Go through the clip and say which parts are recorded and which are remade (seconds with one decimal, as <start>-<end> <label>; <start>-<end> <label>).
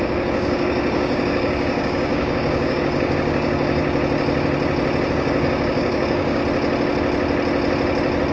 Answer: 0.0-3.8 remade; 3.8-5.1 recorded; 5.1-6.4 remade; 6.4-8.3 recorded